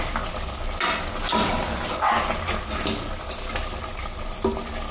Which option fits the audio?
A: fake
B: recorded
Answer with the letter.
B